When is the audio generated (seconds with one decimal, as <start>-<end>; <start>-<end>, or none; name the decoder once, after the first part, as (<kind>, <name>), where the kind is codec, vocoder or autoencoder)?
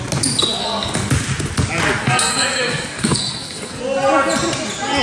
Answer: 0.6-1.1 (codec, SNAC); 2.0-3.8